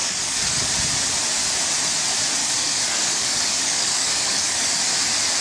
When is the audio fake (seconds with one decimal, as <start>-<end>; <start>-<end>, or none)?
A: 0.0-0.7; 2.4-4.8